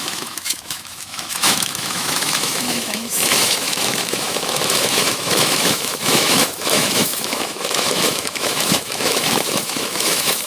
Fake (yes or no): yes